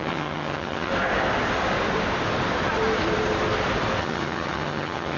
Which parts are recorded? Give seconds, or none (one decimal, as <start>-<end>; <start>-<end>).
0.9-4.0